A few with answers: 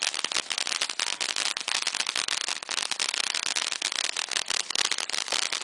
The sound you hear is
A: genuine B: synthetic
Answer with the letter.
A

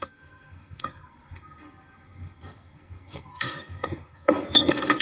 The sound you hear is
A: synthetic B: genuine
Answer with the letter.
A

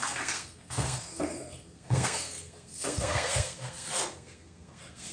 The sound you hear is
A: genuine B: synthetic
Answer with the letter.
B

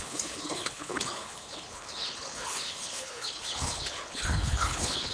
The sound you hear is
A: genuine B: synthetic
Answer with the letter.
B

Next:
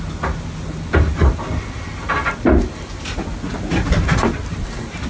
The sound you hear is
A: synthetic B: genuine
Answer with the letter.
B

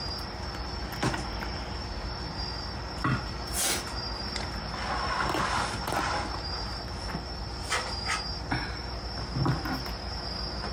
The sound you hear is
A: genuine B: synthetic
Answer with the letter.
A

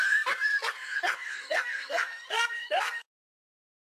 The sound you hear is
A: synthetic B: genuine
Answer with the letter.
A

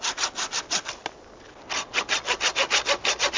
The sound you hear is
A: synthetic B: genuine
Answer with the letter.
B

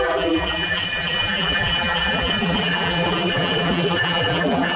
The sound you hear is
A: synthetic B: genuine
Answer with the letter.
A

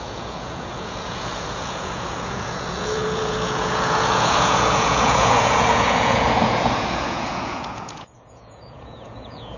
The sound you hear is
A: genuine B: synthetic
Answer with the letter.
B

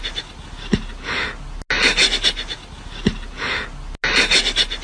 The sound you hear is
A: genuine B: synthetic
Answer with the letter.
A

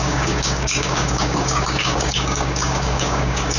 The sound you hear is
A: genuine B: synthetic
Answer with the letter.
B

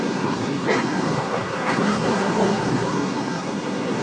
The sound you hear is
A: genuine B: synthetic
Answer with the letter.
B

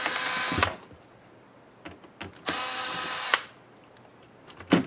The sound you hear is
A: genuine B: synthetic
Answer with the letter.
A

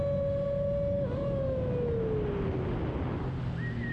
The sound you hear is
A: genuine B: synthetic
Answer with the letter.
A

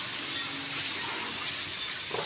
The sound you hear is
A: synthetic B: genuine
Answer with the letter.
B